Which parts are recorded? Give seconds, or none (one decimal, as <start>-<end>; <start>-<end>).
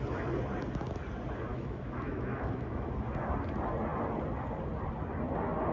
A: 0.0-1.5; 2.9-5.7